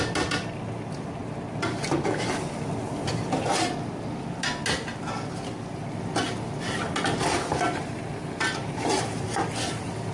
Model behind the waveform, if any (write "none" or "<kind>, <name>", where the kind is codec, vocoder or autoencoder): none